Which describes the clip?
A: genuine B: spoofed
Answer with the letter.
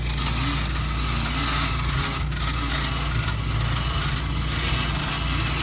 A